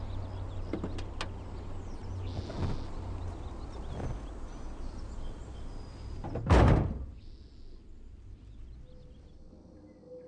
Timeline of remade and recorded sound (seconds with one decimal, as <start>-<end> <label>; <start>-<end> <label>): 0.0-10.3 recorded